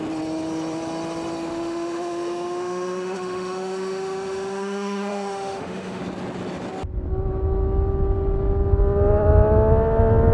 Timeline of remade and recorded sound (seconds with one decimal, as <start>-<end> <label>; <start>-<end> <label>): 0.0-1.5 recorded; 1.5-6.0 remade; 6.0-10.3 recorded